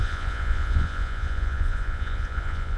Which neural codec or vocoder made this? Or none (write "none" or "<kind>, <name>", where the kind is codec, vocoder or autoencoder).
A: vocoder, Vocos